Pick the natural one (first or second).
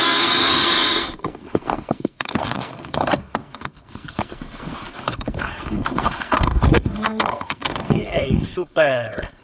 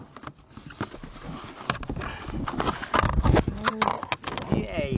second